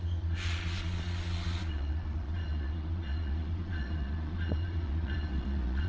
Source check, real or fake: fake